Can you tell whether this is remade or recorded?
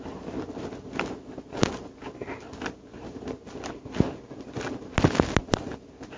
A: recorded